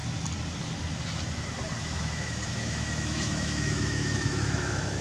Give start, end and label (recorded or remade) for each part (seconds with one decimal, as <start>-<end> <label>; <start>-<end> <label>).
0.0-1.8 recorded; 1.8-5.0 remade